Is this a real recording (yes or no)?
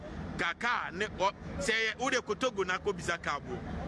yes